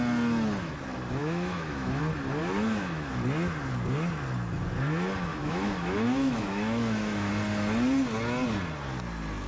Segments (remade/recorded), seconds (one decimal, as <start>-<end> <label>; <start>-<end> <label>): 0.0-1.2 recorded; 1.2-2.0 remade; 2.0-2.4 recorded; 2.4-3.1 remade; 3.1-5.3 recorded; 5.3-7.3 remade; 7.3-9.5 recorded